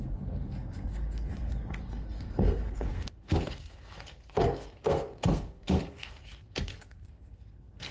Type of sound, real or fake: fake